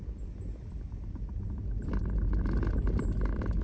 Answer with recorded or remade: recorded